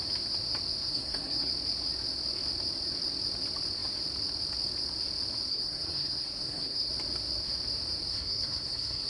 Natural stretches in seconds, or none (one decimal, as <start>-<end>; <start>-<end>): 0.0-0.8; 1.5-5.5; 6.9-8.1

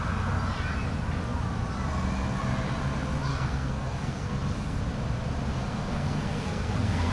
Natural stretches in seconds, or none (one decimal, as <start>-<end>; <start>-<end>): 0.0-3.3; 4.8-5.5

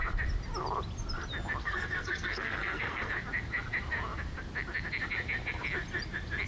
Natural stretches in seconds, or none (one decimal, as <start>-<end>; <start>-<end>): 0.0-1.6; 3.1-6.5

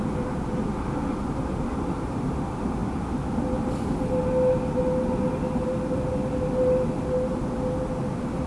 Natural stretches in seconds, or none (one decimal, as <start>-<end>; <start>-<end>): 0.0-8.5

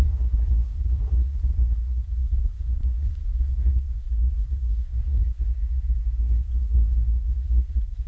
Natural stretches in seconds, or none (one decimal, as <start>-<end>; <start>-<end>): 5.5-6.2

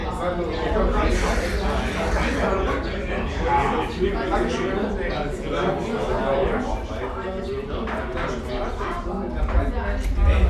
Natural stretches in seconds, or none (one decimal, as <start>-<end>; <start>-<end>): 0.0-10.5

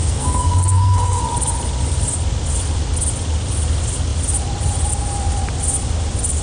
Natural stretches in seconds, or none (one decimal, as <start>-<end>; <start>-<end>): 1.2-6.4